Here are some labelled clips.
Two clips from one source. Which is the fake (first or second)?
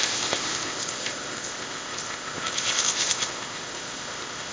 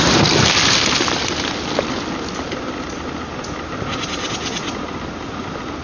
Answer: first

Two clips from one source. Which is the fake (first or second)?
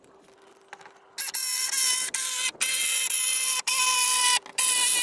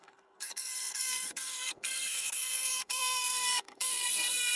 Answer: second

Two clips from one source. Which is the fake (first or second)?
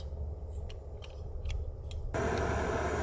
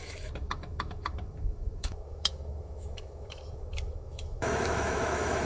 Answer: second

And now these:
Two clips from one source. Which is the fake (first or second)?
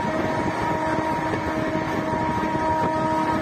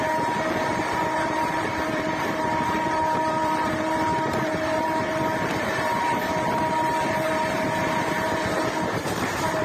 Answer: second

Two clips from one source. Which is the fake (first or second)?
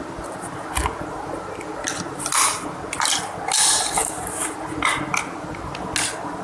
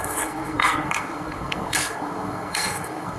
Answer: second